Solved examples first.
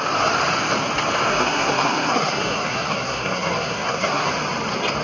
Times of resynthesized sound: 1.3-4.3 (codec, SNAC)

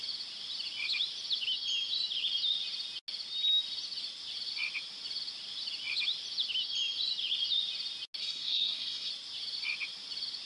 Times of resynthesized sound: 8.2-9.1 (codec, SNAC)

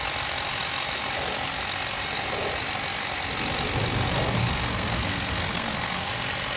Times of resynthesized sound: 4.4-6.1 (codec, SNAC)

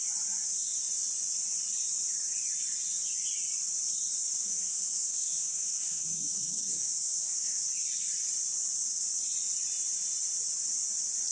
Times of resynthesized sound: 4.4-7.6 (codec, SNAC)

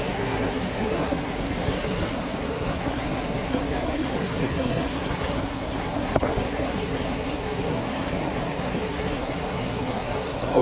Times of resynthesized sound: 0.0-10.6 (codec, SNAC)